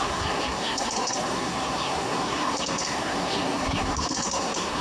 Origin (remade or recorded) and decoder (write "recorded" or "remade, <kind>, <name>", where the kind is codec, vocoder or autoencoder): remade, codec, SNAC